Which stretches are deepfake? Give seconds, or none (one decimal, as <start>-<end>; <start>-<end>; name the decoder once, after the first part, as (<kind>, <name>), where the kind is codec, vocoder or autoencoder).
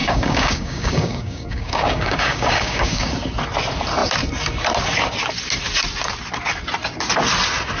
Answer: 0.0-3.1 (codec, DAC)